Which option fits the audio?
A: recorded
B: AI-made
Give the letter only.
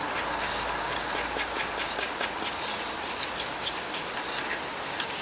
A